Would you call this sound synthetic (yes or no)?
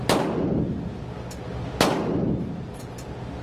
no